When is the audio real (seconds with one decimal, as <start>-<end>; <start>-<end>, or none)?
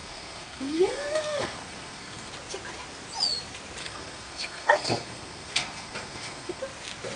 2.3-3.8; 6.6-7.2